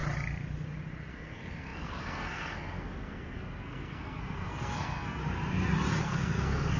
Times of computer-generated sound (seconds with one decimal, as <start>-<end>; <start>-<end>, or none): 1.1-5.2; 6.0-6.8